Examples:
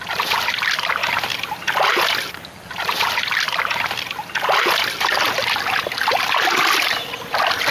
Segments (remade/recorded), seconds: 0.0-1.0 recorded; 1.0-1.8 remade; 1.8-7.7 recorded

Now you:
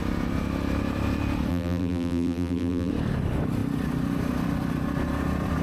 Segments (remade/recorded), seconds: 0.0-1.5 recorded; 1.5-2.9 remade; 2.9-5.6 recorded

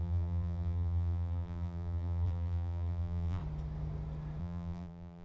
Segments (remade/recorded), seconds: 0.0-3.4 remade; 3.4-4.4 recorded; 4.4-5.2 remade

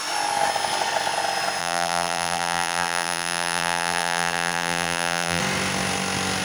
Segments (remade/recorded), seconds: 0.0-1.6 recorded; 1.6-5.4 remade; 5.4-6.4 recorded

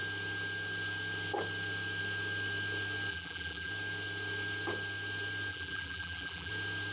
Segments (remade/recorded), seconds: 0.0-3.1 recorded; 3.1-3.7 remade; 3.7-5.5 recorded; 5.5-6.5 remade; 6.5-6.9 recorded